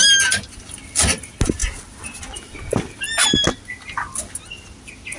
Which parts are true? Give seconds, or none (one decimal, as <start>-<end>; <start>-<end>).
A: 0.0-5.2